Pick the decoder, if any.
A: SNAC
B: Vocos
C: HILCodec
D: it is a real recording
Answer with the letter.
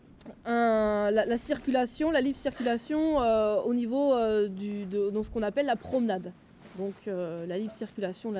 D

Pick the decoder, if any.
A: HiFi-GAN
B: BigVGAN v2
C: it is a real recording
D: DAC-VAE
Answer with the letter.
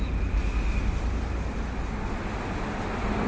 C